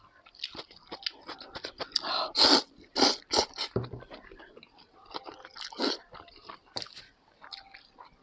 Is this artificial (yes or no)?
no